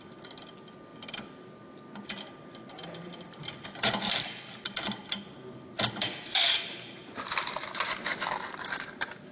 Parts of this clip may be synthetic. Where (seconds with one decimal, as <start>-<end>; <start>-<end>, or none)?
none